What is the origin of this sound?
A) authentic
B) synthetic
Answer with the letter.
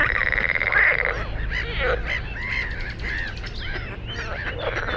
A